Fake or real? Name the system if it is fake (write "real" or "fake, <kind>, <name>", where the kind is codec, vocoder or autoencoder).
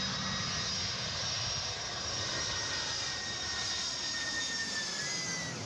real